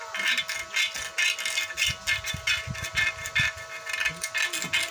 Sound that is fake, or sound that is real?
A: real